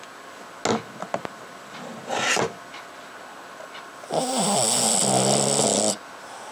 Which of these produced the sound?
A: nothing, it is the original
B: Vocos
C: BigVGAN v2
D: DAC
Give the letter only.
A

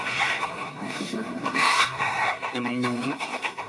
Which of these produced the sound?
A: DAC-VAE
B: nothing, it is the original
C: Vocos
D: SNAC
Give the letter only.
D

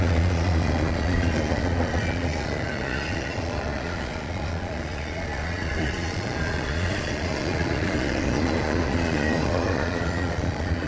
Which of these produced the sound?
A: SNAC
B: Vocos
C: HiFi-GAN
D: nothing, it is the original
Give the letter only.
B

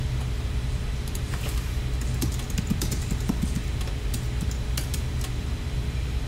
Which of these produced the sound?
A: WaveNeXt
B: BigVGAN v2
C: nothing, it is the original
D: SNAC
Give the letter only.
C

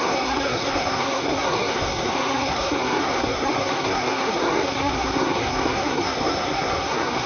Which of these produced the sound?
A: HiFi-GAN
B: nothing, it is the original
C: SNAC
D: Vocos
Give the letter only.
C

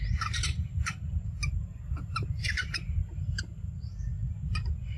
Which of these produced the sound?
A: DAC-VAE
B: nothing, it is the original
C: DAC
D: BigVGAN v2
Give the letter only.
B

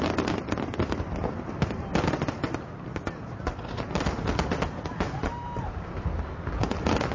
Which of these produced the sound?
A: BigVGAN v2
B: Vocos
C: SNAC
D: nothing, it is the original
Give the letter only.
D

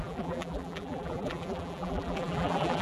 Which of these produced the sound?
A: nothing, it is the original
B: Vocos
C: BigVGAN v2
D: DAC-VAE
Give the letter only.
C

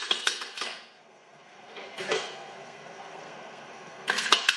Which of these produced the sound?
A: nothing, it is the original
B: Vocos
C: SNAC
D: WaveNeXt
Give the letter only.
C